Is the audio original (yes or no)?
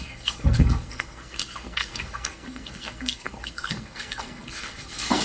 no